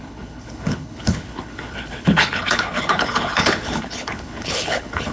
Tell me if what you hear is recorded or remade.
remade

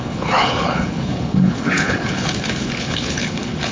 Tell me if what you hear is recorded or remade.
remade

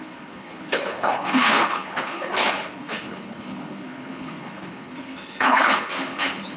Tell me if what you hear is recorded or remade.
remade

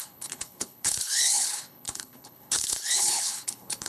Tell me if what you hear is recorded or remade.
remade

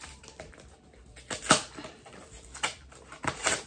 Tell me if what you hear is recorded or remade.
recorded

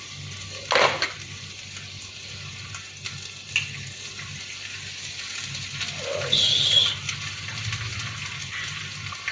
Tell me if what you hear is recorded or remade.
recorded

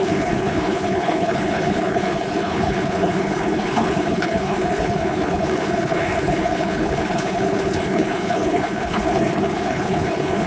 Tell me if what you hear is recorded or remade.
remade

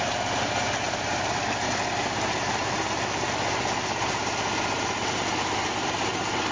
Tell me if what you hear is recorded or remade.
recorded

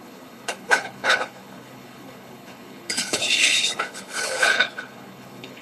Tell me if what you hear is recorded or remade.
remade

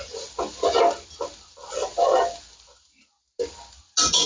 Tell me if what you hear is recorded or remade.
recorded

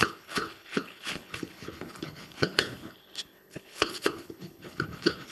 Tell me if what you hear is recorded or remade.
remade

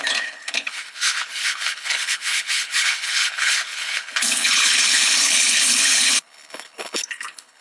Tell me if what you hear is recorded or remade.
remade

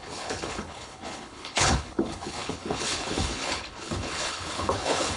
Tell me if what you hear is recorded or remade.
remade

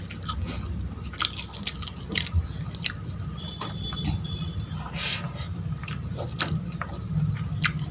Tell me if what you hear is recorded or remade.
recorded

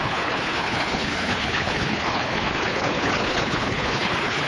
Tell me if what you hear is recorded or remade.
remade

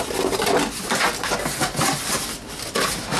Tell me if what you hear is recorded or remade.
recorded